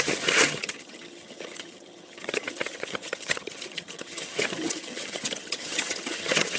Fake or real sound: fake